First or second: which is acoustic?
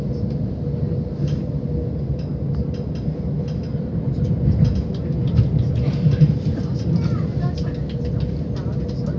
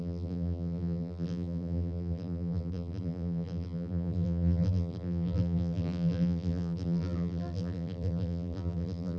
first